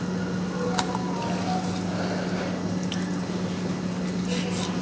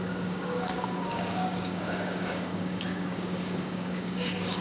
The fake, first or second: second